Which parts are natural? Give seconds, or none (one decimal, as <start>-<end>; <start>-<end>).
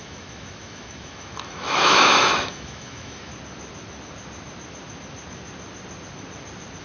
3.3-6.8